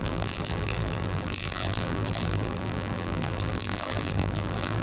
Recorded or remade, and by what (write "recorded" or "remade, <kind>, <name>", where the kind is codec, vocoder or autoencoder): remade, vocoder, BigVGAN v2